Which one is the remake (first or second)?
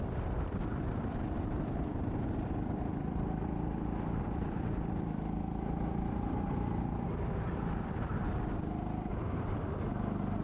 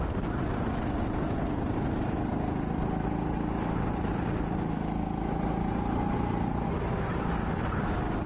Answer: first